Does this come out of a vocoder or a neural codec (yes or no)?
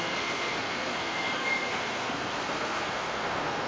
yes